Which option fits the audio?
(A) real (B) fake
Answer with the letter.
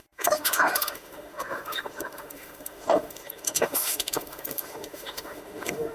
B